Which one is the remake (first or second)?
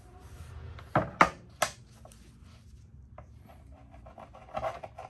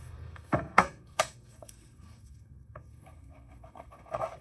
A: second